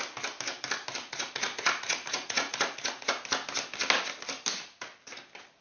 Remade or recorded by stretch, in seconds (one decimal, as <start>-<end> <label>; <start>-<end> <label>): 0.0-1.0 recorded; 1.0-3.1 remade; 3.1-5.6 recorded